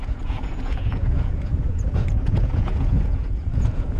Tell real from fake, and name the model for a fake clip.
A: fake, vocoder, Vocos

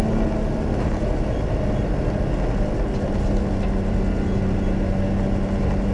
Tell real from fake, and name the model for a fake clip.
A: real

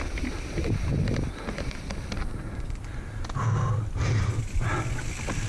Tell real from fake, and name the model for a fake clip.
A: real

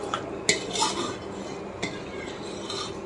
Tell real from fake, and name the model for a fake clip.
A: real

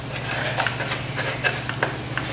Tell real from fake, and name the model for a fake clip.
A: real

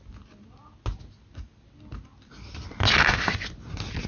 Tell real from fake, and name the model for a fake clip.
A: real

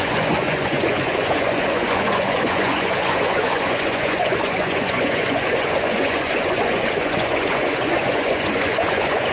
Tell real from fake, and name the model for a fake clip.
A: fake, vocoder, Vocos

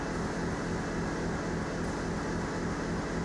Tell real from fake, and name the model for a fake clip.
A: real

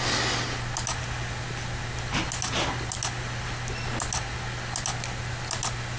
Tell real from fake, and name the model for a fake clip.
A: real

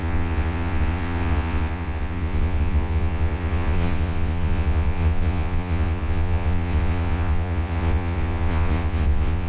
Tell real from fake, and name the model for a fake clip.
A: fake, vocoder, Vocos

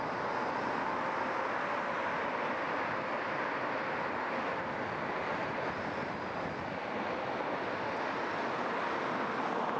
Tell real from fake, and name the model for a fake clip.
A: real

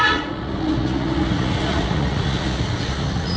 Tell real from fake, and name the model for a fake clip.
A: fake, vocoder, Vocos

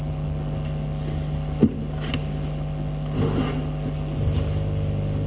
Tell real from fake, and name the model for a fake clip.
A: real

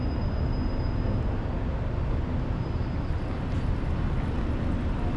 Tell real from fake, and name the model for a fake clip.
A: real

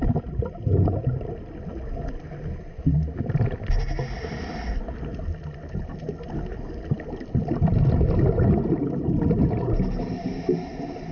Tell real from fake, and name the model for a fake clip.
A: real